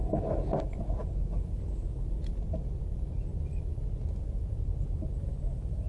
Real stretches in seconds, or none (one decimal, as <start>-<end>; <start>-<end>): 0.0-5.9